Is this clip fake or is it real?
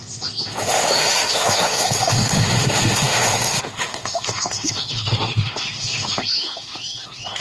fake